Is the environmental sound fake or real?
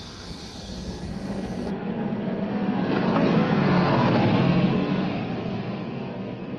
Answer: fake